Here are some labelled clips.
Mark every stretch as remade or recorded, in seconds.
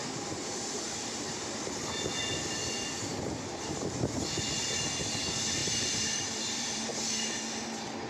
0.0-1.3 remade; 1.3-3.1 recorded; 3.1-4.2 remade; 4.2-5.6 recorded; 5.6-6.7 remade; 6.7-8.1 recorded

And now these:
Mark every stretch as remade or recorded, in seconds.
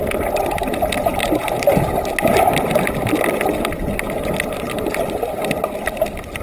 0.0-6.4 recorded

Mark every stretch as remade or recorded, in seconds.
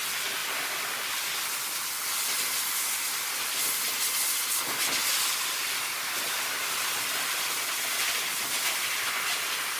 0.0-0.4 recorded; 0.4-2.4 remade; 2.4-5.0 recorded; 5.0-9.1 remade; 9.1-9.8 recorded